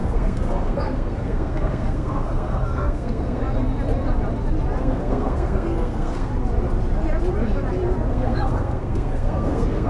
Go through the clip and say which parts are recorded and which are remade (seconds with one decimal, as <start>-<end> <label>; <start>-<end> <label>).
0.0-3.4 remade; 3.4-4.8 recorded; 4.8-6.3 remade; 6.3-8.1 recorded; 8.1-9.9 remade